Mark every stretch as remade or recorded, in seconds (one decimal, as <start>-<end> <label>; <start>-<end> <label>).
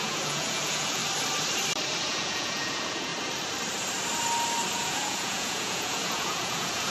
0.0-1.0 remade; 1.0-2.0 recorded; 2.0-3.1 remade; 3.1-4.7 recorded; 4.7-6.9 remade